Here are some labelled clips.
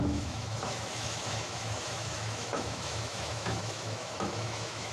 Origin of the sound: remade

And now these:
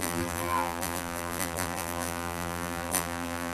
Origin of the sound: remade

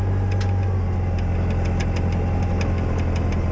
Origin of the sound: recorded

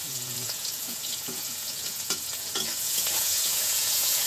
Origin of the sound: remade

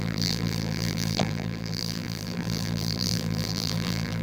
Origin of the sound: remade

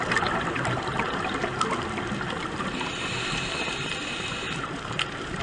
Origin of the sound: recorded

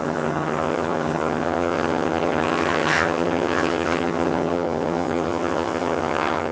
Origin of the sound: remade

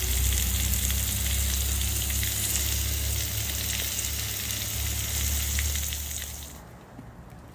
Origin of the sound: recorded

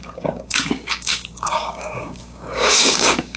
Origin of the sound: remade